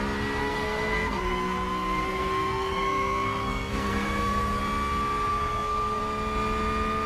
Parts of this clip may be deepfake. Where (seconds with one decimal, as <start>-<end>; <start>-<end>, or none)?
0.4-4.6; 5.3-6.0